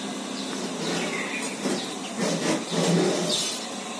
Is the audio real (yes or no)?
yes